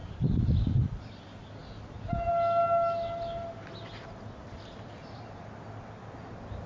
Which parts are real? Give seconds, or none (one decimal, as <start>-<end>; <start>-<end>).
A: 0.0-6.7